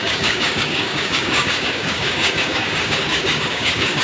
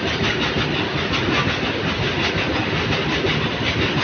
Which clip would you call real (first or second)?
second